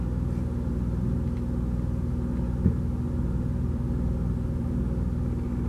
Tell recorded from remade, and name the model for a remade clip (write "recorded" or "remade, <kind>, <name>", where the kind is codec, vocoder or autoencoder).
recorded